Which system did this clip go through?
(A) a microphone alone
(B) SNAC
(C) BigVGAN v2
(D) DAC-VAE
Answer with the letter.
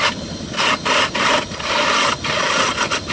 A